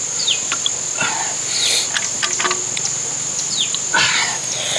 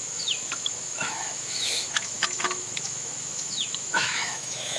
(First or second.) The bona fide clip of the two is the first